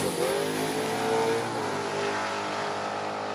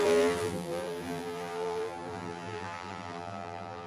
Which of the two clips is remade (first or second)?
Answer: second